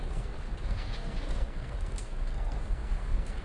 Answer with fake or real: fake